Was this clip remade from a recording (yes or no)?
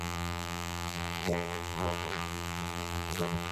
yes